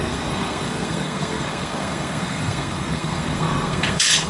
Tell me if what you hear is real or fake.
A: fake